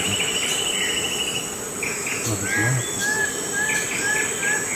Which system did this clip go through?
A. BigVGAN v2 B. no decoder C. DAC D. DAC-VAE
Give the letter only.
B